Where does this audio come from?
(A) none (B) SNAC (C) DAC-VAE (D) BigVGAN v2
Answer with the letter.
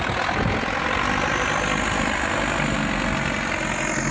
A